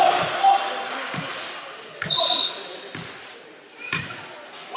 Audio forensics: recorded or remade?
recorded